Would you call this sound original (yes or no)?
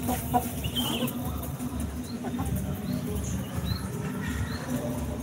yes